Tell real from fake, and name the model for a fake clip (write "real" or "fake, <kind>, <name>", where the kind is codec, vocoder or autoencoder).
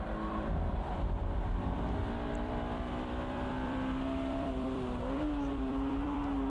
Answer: fake, vocoder, BigVGAN v2